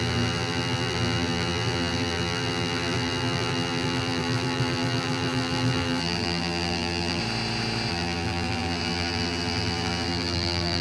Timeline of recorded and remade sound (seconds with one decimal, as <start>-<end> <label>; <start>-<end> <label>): 0.0-7.2 remade; 7.2-7.9 recorded; 7.9-10.8 remade